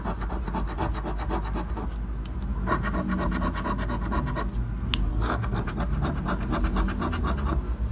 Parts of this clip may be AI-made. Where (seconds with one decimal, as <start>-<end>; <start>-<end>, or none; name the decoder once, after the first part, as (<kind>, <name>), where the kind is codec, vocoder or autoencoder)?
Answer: 5.1-5.6 (codec, SNAC)